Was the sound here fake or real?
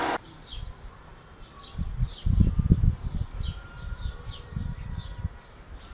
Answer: real